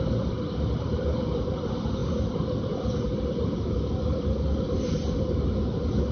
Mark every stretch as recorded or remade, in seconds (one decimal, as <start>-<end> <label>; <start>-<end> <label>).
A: 0.0-6.1 recorded